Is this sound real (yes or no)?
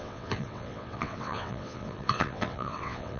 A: no